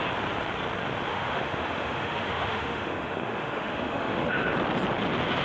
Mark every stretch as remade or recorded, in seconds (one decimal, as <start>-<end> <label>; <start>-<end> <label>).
0.0-1.1 recorded; 1.1-4.3 remade; 4.3-5.4 recorded